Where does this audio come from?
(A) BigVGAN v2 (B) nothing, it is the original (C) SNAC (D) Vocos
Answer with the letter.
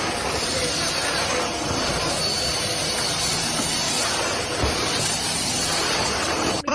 B